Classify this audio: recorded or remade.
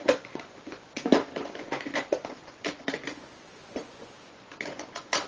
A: remade